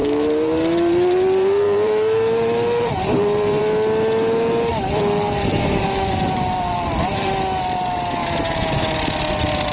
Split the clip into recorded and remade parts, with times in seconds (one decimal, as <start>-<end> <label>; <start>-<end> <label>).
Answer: 0.0-3.6 remade; 3.6-4.7 recorded; 4.7-7.3 remade; 7.3-9.7 recorded